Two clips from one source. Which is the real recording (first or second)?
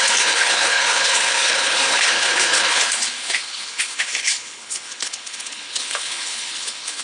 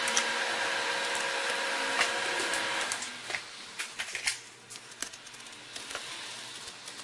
second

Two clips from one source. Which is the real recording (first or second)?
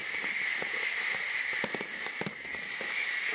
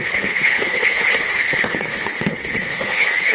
first